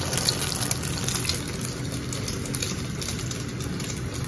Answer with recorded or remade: recorded